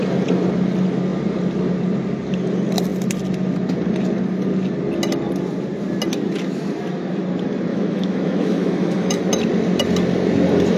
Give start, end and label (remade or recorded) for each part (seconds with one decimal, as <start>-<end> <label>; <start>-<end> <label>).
0.0-7.7 recorded; 7.7-9.2 remade; 9.2-10.8 recorded